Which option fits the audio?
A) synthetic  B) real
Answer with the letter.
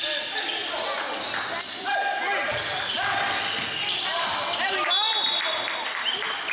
B